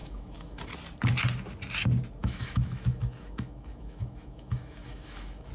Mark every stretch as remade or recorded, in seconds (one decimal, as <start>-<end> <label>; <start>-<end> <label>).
0.0-0.6 remade; 0.6-2.2 recorded; 2.2-5.5 remade

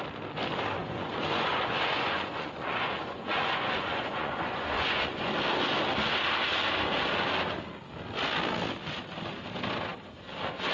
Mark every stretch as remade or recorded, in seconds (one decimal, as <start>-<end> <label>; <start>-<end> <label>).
0.0-0.8 recorded; 0.8-5.3 remade; 5.3-10.7 recorded

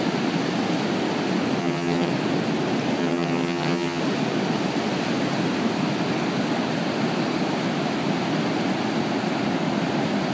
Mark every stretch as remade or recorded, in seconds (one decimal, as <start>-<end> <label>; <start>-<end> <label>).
0.0-1.6 recorded; 1.6-2.1 remade; 2.1-3.0 recorded; 3.0-4.0 remade; 4.0-10.3 recorded

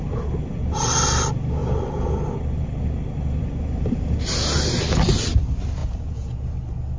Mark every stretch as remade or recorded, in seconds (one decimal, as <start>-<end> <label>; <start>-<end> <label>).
0.0-5.8 recorded; 5.8-6.5 remade; 6.5-7.0 recorded

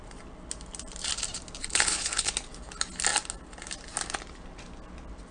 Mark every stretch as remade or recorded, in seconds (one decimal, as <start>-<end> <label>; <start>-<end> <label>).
0.0-1.6 recorded; 1.6-2.3 remade; 2.3-5.3 recorded

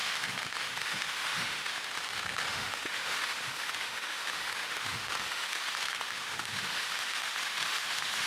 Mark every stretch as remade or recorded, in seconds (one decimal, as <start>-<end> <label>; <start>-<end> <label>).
0.0-8.3 remade

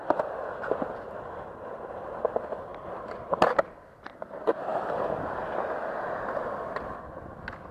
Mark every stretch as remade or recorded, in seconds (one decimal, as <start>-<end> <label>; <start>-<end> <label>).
0.0-7.7 recorded